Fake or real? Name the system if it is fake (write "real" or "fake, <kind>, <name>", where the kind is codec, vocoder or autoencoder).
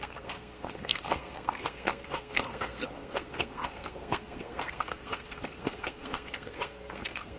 fake, codec, SNAC